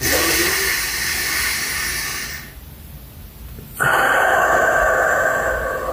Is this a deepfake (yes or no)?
no